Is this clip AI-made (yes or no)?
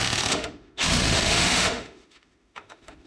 yes